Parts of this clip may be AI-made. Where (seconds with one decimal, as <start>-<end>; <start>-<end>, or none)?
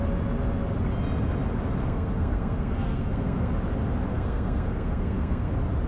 1.8-3.5; 4.1-5.5